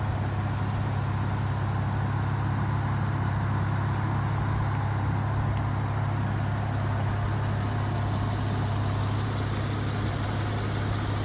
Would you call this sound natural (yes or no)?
yes